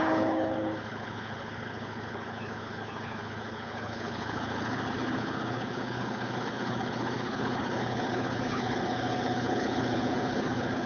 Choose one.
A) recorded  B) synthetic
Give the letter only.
B